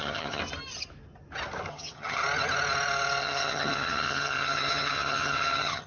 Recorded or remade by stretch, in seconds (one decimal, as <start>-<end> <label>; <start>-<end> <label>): 0.0-0.4 remade; 0.4-1.7 recorded; 1.7-2.2 remade; 2.2-3.2 recorded; 3.2-5.9 remade